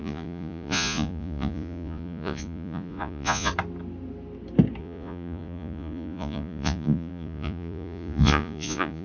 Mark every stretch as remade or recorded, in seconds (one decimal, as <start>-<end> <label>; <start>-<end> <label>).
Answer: 0.0-3.5 remade; 3.5-4.8 recorded; 4.8-9.0 remade